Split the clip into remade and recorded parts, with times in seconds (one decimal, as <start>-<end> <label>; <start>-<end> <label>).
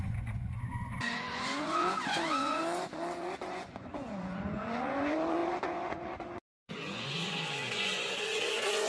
0.0-8.9 remade